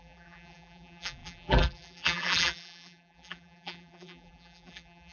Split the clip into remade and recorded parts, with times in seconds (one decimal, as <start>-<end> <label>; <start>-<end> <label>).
0.0-5.1 remade